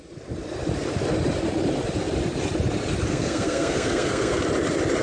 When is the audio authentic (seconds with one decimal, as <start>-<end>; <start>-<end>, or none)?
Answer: 0.0-3.1; 4.4-5.0